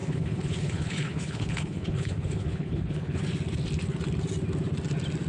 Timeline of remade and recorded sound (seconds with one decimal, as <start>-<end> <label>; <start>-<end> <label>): 0.0-3.2 remade; 3.2-5.3 recorded